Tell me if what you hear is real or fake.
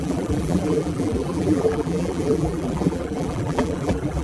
fake